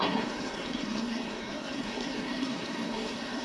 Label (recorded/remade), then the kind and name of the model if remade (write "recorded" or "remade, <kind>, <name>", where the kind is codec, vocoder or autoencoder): remade, codec, SNAC